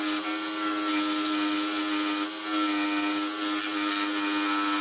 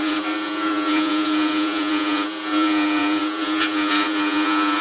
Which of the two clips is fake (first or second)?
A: second